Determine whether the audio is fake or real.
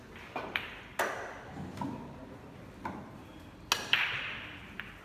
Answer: real